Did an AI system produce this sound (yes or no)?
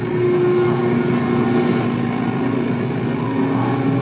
no